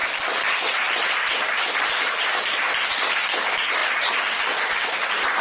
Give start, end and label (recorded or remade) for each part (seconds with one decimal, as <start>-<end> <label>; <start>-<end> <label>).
0.0-5.4 recorded